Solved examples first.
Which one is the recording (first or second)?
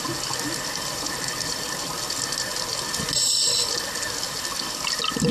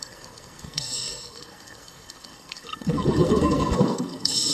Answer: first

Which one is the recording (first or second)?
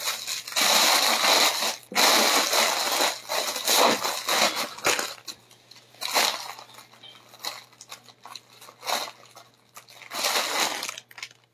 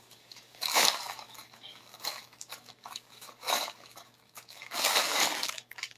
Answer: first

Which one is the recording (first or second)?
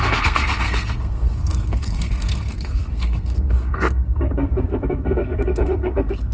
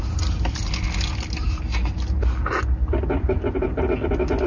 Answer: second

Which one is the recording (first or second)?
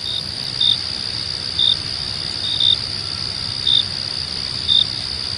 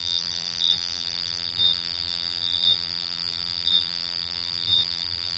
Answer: first